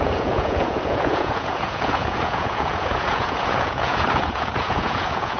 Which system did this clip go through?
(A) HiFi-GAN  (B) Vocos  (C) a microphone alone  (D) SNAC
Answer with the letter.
B